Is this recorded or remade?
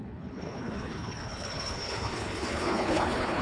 remade